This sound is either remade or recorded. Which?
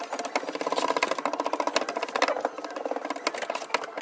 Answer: recorded